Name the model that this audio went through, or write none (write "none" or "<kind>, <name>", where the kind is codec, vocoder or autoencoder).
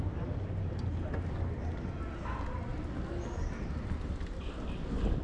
none